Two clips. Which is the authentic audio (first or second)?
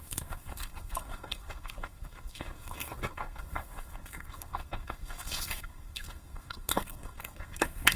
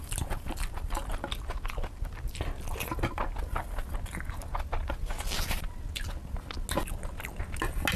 second